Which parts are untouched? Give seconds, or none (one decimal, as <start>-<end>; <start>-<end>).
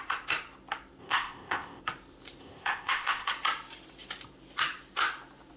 0.0-1.0; 1.8-2.4; 3.3-5.6